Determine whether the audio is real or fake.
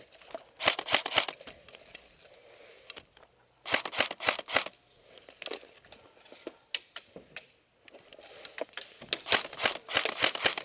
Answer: real